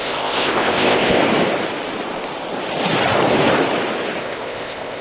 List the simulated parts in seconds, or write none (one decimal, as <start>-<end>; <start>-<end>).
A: 0.0-1.2; 4.2-5.0